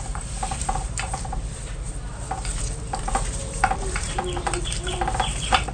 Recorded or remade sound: remade